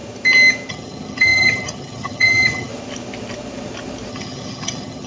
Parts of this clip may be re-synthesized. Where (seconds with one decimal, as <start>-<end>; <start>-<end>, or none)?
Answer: 0.7-2.7; 4.1-5.1